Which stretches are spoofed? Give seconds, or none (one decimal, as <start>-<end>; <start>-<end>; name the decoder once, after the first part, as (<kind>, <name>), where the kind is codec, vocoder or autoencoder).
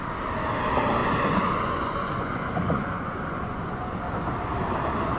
1.0-4.0 (vocoder, Vocos)